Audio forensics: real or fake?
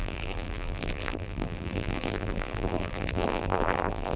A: fake